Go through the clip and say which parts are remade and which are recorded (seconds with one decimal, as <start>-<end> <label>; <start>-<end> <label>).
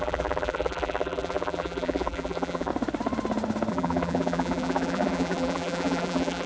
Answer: 0.0-2.7 remade; 2.7-3.7 recorded; 3.7-6.5 remade